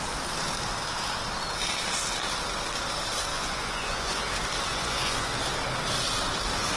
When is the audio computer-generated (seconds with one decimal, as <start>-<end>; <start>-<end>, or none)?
3.3-4.2; 4.7-5.3